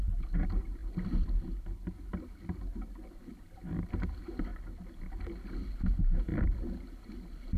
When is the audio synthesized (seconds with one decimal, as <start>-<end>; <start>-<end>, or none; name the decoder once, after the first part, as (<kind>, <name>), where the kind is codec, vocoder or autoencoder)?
0.8-2.2 (vocoder, BigVGAN v2); 4.5-5.0; 6.3-7.0